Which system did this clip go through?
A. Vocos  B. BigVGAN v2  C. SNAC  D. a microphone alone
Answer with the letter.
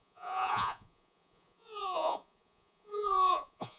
A